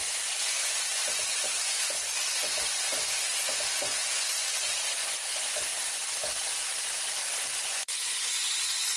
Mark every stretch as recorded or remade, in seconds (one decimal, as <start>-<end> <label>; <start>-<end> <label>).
0.0-5.7 remade; 5.7-7.4 recorded; 7.4-9.0 remade